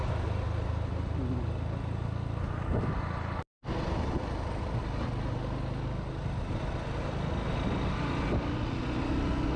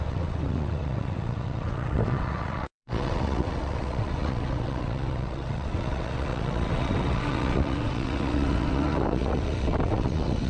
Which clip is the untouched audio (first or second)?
first